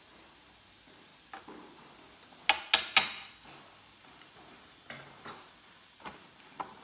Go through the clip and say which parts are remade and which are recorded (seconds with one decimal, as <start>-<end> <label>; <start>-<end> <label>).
0.0-1.1 remade; 1.1-3.8 recorded; 3.8-6.8 remade